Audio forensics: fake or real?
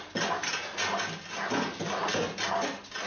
real